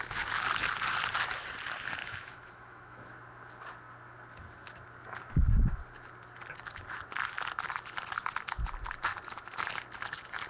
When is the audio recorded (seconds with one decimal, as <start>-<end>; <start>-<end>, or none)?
0.0-2.0; 3.1-10.5